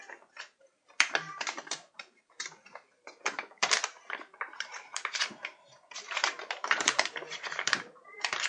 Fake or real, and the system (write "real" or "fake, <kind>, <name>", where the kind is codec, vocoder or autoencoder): fake, vocoder, BigVGAN v2